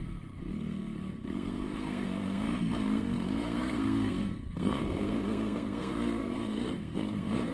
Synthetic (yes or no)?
yes